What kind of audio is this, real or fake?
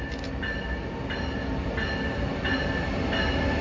real